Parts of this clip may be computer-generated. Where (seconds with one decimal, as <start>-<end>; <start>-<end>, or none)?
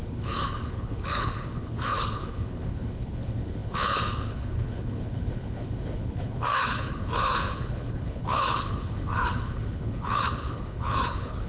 0.0-11.5